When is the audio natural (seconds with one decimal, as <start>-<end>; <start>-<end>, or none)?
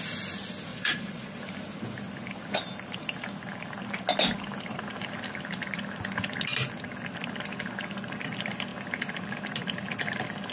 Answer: 0.0-0.7; 1.4-10.5